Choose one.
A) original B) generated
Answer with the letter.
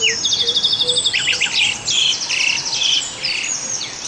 A